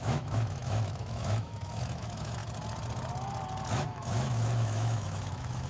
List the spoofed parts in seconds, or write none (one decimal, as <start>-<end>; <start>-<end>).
0.0-2.4; 3.7-5.7